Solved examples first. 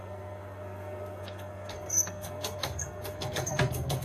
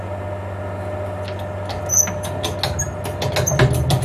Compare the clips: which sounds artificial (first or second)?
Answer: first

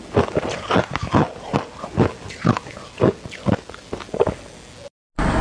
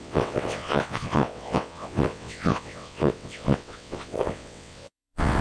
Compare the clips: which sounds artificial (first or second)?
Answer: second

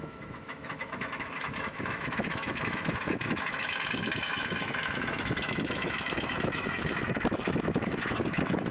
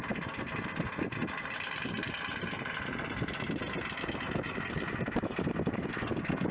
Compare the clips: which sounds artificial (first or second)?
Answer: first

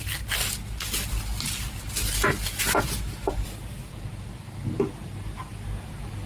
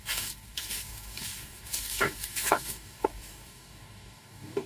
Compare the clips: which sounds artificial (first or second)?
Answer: second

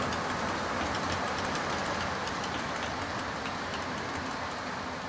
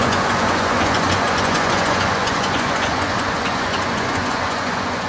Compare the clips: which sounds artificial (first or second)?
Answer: second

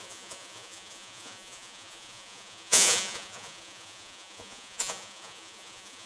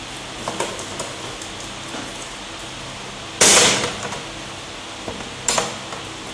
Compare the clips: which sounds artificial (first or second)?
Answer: first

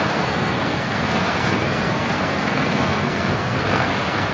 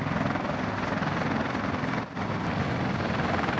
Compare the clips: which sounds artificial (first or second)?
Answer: first